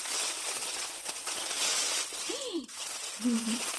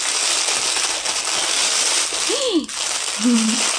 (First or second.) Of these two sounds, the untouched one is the second